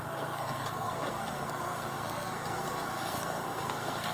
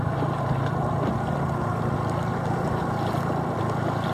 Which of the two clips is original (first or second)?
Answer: second